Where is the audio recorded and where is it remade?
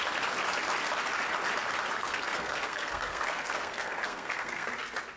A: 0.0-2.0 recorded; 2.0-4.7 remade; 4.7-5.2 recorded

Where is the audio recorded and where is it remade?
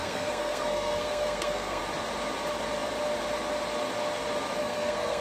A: 0.0-1.8 remade; 1.8-4.6 recorded; 4.6-5.2 remade